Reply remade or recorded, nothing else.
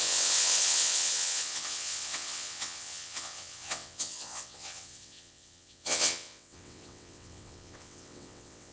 remade